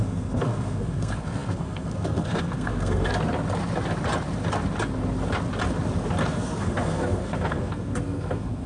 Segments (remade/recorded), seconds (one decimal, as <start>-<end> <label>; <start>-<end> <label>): 0.0-3.1 remade; 3.1-6.2 recorded; 6.2-8.7 remade